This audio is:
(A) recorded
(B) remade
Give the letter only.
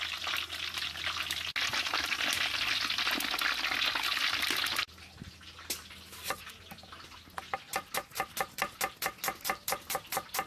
A